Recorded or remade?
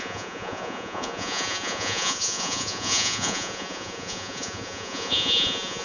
remade